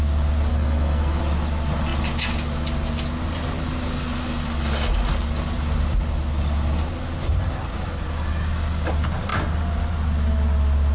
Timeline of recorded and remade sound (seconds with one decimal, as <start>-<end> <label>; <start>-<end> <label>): 0.0-0.5 recorded; 0.5-1.2 remade; 1.2-10.9 recorded